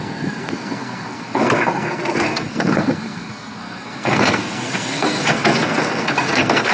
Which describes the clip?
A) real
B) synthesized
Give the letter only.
B